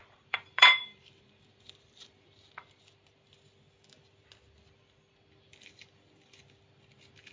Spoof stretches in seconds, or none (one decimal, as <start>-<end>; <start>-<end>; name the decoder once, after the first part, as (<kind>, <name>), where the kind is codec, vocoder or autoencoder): 0.0-2.8 (vocoder, BigVGAN v2)

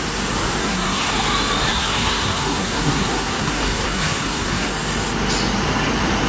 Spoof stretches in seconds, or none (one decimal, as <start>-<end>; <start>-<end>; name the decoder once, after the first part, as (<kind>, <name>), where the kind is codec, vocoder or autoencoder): 0.6-1.1 (codec, SNAC); 1.7-4.7

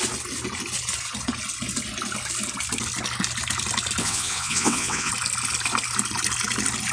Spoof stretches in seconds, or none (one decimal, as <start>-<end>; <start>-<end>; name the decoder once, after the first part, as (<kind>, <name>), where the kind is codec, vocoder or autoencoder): 4.0-5.1 (vocoder, WaveNeXt)

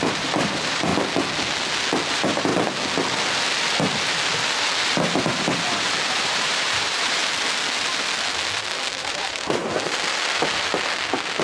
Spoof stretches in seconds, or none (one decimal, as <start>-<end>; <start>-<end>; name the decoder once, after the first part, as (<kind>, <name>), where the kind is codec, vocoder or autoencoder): 0.0-0.9 (vocoder, BigVGAN v2); 2.1-2.5; 6.1-7.2; 9.0-9.6

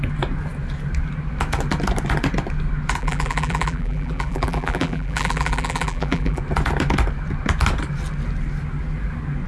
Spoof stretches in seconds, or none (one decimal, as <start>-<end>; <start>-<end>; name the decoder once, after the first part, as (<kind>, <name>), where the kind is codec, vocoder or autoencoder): 3.0-6.4 (vocoder, BigVGAN v2)

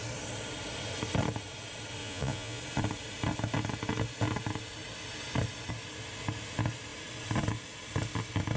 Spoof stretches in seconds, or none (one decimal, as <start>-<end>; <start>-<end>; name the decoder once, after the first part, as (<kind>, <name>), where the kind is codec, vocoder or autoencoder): 2.0-2.6 (vocoder, Vocos)

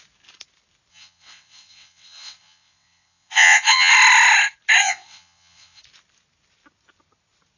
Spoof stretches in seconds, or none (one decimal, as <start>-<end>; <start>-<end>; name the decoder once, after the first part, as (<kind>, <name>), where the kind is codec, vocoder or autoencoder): 0.9-3.9 (vocoder, WaveNeXt); 4.8-5.8